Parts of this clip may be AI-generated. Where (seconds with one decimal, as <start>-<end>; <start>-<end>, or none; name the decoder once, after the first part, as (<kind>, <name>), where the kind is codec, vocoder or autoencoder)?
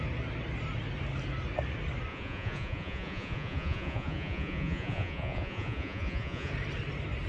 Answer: 2.1-6.5 (vocoder, Vocos)